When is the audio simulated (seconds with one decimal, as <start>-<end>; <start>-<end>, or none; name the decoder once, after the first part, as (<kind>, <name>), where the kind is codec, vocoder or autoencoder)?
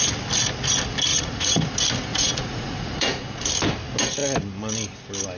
1.1-1.7 (vocoder, Vocos); 2.1-3.5